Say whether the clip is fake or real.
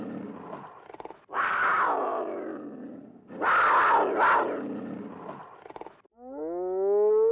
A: real